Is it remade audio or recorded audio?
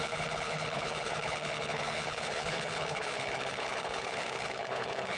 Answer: remade